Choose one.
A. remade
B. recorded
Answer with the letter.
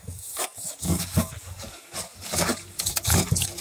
A